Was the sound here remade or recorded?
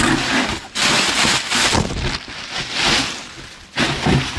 recorded